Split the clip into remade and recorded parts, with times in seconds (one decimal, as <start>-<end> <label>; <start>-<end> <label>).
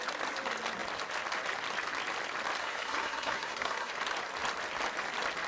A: 0.0-2.6 recorded; 2.6-3.9 remade; 3.9-5.5 recorded